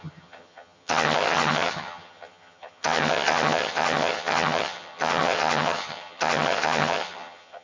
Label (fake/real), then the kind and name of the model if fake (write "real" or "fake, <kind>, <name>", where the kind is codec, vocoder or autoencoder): fake, vocoder, HiFi-GAN